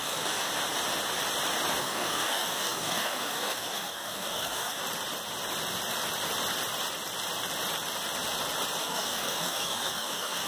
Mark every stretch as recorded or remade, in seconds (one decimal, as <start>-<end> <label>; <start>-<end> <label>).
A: 0.0-0.5 remade; 0.5-1.8 recorded; 1.8-4.8 remade; 4.8-8.8 recorded; 8.8-10.5 remade